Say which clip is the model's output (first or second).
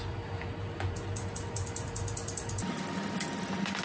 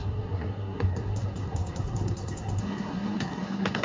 second